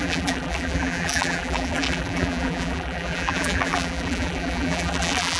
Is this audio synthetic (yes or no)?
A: yes